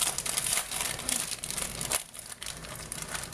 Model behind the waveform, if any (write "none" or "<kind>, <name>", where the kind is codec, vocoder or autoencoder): vocoder, BigVGAN v2